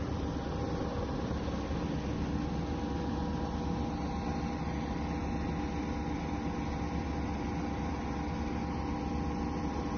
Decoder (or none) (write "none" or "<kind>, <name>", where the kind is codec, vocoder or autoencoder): none